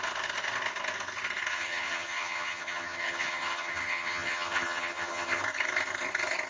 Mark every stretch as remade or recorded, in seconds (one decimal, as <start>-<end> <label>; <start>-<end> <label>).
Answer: 0.0-1.5 recorded; 1.5-5.4 remade; 5.4-6.5 recorded